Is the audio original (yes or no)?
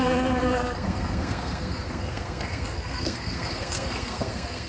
no